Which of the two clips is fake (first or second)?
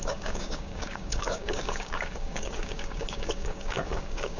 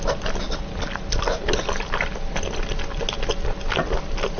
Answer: first